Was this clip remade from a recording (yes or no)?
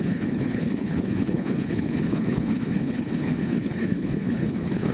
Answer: yes